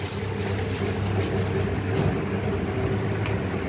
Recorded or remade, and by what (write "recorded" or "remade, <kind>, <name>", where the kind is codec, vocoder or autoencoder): recorded